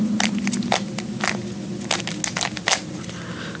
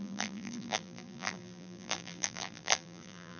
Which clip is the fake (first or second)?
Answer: second